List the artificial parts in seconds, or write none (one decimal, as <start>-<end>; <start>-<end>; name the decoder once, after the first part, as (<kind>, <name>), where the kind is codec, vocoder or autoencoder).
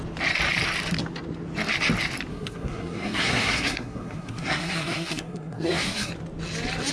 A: 2.3-6.1 (codec, SNAC)